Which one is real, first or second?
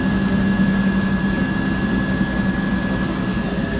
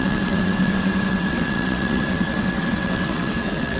first